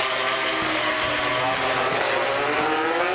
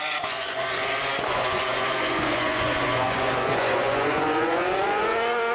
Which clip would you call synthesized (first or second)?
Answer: second